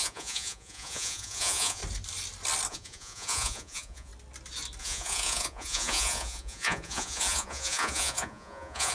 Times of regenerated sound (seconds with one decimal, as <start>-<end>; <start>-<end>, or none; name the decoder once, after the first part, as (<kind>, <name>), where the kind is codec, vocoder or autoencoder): 0.0-1.8 (vocoder, Vocos); 2.7-4.1; 4.8-8.9